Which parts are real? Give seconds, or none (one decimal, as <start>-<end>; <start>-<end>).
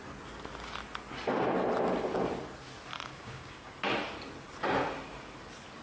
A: 0.0-2.9; 3.7-5.8